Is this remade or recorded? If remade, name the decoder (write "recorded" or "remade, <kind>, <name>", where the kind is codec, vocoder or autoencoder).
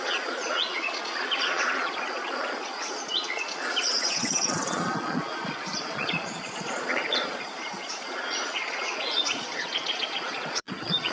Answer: remade, vocoder, Vocos